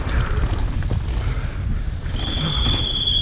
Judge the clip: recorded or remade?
recorded